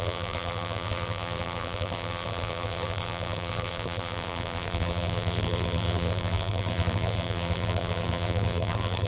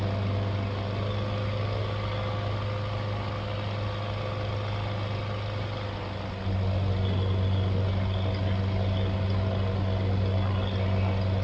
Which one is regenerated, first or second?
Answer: first